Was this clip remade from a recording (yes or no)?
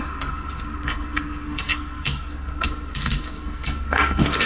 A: yes